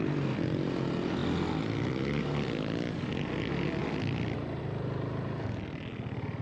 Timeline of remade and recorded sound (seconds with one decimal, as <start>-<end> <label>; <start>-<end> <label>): 0.0-6.4 recorded